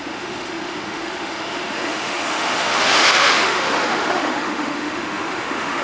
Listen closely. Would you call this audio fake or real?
fake